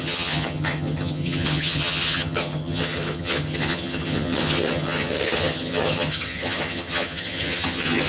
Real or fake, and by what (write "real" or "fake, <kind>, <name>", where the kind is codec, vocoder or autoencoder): fake, vocoder, HiFi-GAN